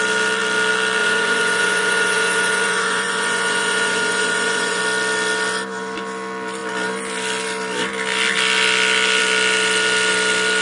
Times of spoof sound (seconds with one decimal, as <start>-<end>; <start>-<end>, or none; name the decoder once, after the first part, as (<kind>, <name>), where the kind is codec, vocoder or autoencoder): 1.0-4.8 (vocoder, Vocos)